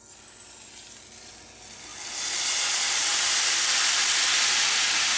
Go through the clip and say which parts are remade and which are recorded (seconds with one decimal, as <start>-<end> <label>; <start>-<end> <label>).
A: 0.0-5.2 recorded